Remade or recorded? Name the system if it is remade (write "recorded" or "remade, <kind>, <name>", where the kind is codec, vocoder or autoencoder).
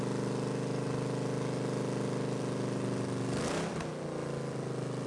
recorded